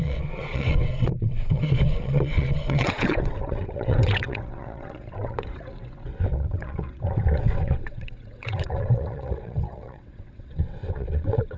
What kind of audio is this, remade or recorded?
remade